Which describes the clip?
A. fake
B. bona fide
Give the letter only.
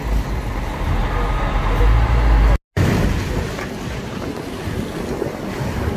B